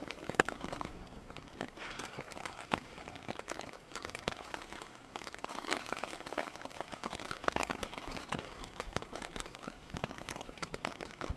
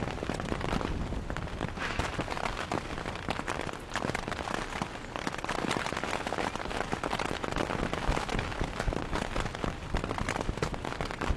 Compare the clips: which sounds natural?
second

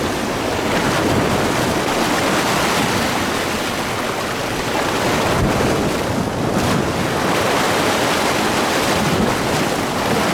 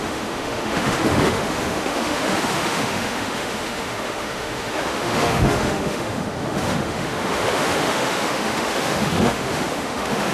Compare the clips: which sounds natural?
first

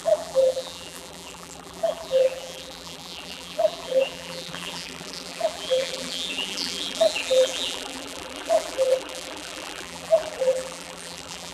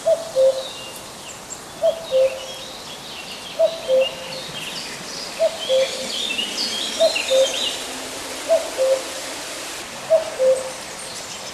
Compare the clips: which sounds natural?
second